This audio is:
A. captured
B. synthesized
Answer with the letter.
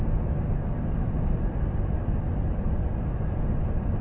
B